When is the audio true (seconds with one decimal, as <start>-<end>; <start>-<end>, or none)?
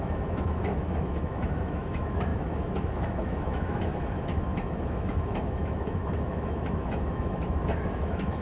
none